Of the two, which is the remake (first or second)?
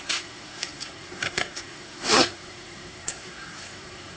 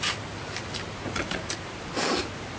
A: first